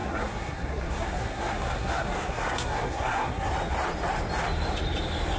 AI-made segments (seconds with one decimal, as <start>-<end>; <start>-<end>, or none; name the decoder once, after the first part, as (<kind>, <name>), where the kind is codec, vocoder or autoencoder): 0.0-3.5 (codec, SNAC)